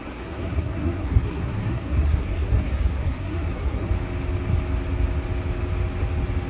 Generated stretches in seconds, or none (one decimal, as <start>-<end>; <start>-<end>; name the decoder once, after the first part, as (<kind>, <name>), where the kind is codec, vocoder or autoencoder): 0.0-3.9 (codec, SNAC)